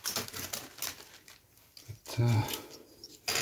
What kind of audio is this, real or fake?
real